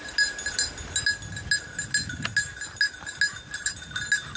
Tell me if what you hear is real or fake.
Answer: real